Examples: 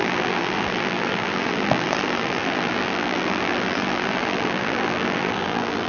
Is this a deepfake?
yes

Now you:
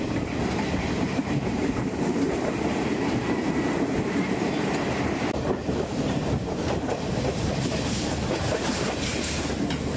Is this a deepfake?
yes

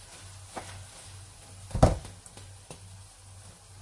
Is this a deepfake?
no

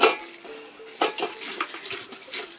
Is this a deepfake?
no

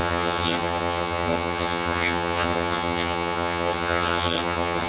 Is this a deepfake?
yes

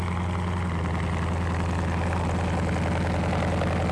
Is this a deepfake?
no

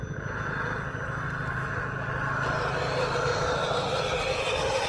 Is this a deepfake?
no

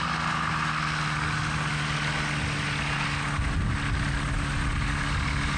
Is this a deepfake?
no